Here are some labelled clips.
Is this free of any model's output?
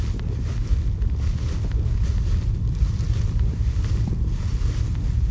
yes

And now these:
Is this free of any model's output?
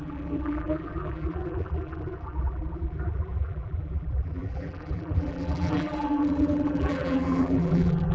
no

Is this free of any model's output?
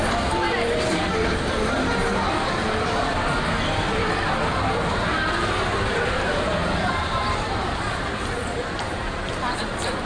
no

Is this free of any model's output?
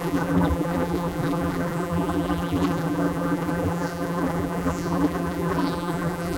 no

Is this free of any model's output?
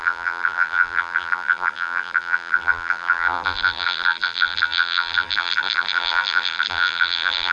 no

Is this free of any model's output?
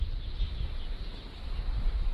yes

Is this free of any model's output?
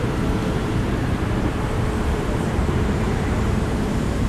no